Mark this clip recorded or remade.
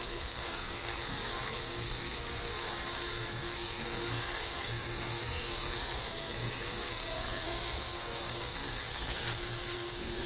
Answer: remade